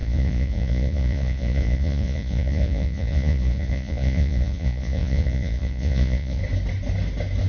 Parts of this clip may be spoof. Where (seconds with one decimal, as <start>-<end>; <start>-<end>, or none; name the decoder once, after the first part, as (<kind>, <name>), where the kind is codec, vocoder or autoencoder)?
0.0-6.4 (vocoder, Vocos)